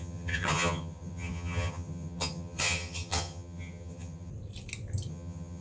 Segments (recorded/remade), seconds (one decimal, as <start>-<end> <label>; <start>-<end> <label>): 0.0-4.3 remade; 4.3-5.1 recorded; 5.1-5.6 remade